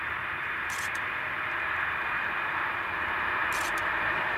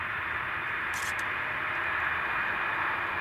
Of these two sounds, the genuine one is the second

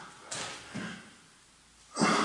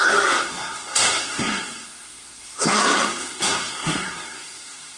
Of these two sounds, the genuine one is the first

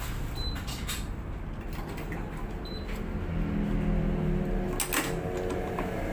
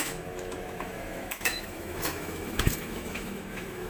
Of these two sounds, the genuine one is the first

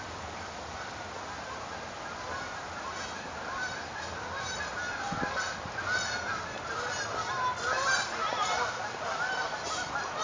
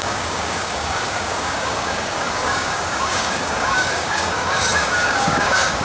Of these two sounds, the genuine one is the first